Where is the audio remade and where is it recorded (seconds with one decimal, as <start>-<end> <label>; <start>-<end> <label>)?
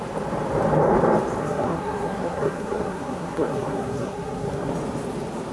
0.0-1.4 recorded; 1.4-4.7 remade; 4.7-5.5 recorded